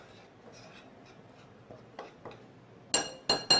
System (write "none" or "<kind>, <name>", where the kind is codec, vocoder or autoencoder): none